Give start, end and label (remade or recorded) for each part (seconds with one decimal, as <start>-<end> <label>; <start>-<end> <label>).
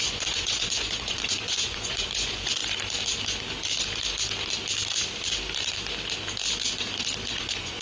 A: 0.0-2.6 remade; 2.6-7.3 recorded; 7.3-7.8 remade